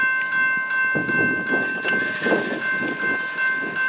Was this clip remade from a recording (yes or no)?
no